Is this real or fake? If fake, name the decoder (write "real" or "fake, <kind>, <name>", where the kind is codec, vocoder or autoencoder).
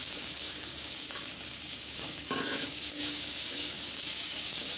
fake, codec, DAC